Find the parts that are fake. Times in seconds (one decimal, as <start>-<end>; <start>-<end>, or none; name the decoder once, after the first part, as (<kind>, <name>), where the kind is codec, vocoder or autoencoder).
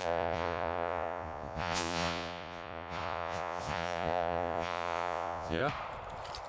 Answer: 0.0-5.6 (vocoder, Vocos)